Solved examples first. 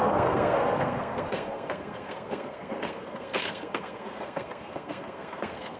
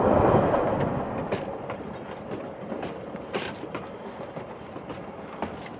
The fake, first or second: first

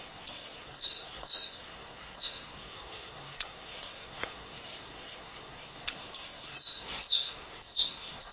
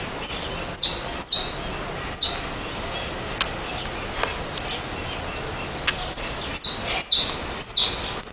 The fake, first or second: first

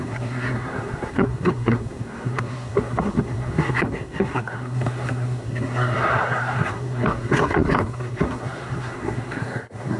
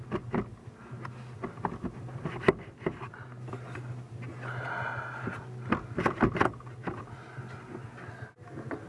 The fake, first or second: first